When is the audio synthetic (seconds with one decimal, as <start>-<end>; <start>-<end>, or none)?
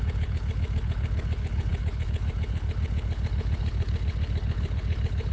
0.0-5.3